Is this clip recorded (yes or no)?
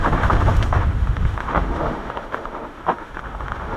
no